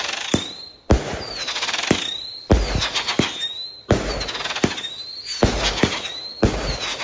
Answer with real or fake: real